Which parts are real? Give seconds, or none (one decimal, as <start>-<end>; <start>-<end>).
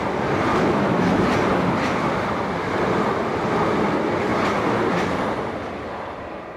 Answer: 0.0-0.5; 1.1-6.6